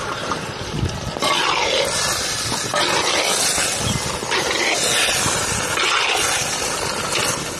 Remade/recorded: recorded